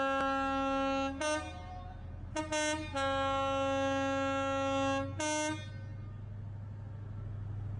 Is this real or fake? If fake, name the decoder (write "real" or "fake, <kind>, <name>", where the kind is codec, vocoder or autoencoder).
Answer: real